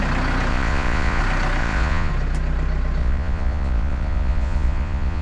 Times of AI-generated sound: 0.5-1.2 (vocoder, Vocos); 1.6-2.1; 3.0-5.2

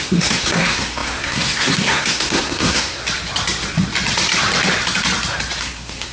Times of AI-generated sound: 0.0-3.0 (codec, SNAC); 5.6-6.1